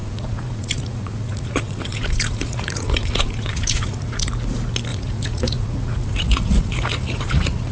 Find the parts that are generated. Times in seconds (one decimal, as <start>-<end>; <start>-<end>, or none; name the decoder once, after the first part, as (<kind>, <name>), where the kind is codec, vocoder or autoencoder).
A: 0.0-4.3 (vocoder, Vocos); 4.9-7.7